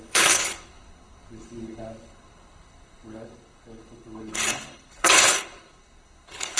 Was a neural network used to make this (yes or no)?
yes